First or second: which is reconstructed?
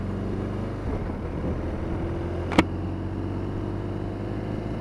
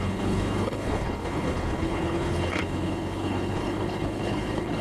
second